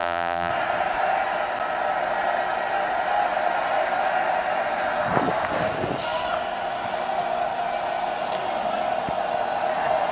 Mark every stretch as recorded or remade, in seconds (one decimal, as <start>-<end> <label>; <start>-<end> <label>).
0.0-0.5 remade; 0.5-10.1 recorded

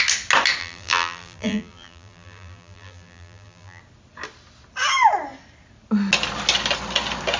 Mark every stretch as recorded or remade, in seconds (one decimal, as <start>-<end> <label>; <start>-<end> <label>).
0.0-0.6 recorded; 0.6-3.8 remade; 3.8-7.4 recorded